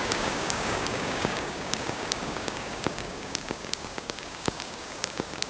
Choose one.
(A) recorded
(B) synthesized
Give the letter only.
B